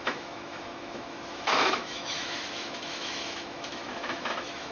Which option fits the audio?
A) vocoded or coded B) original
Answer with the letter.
A